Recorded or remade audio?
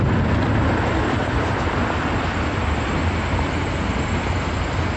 recorded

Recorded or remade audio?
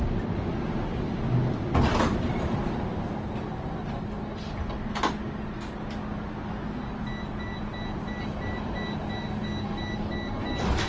recorded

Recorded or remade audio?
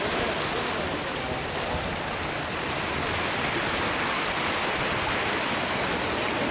recorded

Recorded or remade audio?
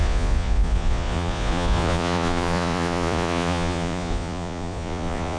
remade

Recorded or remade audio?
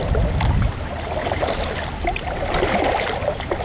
recorded